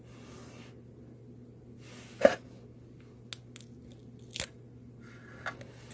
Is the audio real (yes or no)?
yes